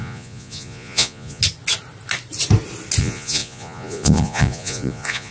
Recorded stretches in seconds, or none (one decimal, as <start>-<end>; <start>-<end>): 1.4-3.0